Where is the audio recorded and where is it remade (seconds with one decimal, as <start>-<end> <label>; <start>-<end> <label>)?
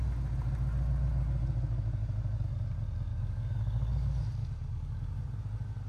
0.0-3.1 recorded; 3.1-4.2 remade; 4.2-4.7 recorded; 4.7-5.2 remade; 5.2-5.9 recorded